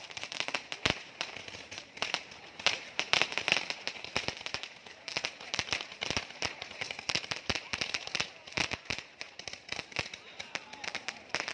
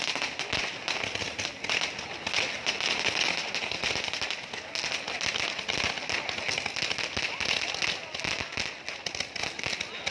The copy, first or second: first